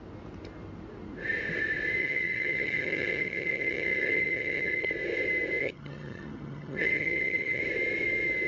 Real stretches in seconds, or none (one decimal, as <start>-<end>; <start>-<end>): 0.0-2.0; 4.9-5.6; 7.6-8.5